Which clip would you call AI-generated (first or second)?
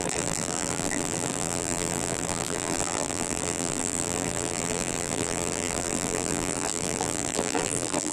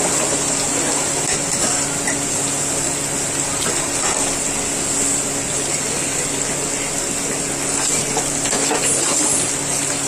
first